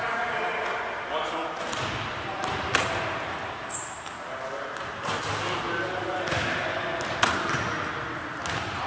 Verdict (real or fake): real